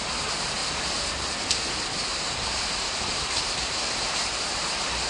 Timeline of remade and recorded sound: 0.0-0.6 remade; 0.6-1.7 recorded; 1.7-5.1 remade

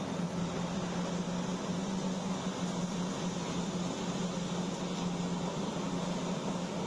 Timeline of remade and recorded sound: 0.0-1.8 recorded; 1.8-2.6 remade; 2.6-6.9 recorded

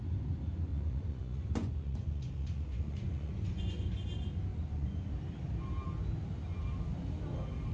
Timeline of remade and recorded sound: 0.0-0.7 recorded; 0.7-3.9 remade; 3.9-4.5 recorded; 4.5-5.1 remade; 5.1-7.7 recorded

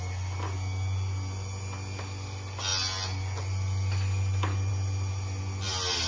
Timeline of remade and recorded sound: 0.0-6.1 recorded

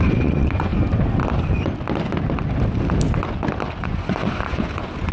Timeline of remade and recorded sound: 0.0-0.7 remade; 0.7-3.8 recorded; 3.8-5.1 remade